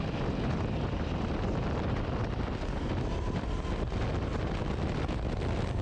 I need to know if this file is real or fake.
real